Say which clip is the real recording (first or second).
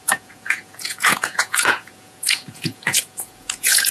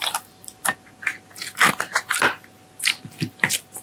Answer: second